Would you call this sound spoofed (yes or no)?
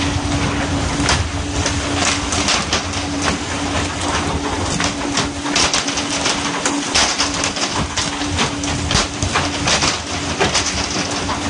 no